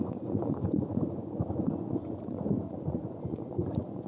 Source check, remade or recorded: remade